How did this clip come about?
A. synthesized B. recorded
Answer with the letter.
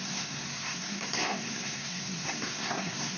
A